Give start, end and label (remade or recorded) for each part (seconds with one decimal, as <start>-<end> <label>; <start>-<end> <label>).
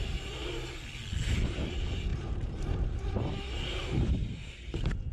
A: 0.0-2.1 recorded; 2.1-5.1 remade